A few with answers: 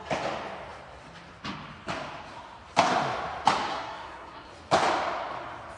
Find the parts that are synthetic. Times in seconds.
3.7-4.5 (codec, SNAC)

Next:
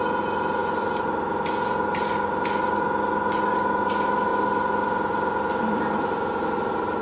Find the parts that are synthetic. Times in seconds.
none

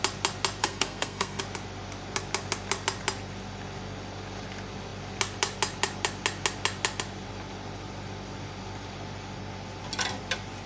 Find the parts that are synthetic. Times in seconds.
0.6-1.4 (codec, SNAC)